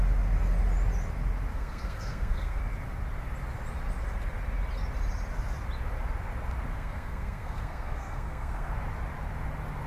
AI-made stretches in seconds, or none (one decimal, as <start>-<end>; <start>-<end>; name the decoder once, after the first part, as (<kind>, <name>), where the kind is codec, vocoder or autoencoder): 1.5-2.6 (codec, SNAC); 6.7-8.7